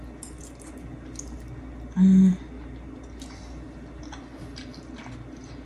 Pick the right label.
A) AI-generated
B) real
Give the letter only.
B